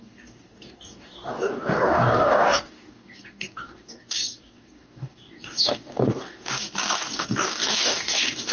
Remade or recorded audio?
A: remade